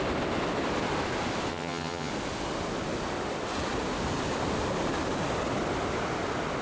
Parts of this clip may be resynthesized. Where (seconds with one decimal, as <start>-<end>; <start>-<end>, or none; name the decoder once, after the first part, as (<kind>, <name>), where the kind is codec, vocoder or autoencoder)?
1.5-2.1 (vocoder, HiFi-GAN)